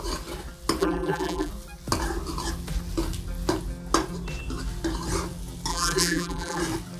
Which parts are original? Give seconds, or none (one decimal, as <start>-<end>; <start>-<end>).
0.0-0.8; 1.5-5.7; 6.6-7.0